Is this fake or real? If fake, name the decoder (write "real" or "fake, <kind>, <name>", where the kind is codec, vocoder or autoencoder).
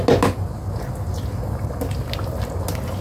real